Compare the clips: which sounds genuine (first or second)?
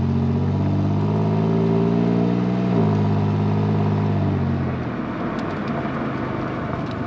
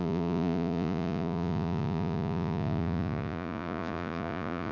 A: first